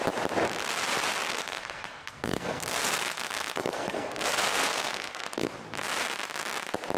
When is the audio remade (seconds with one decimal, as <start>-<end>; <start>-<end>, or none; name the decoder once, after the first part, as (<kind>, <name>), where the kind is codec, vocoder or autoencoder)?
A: 1.3-5.5 (codec, SNAC)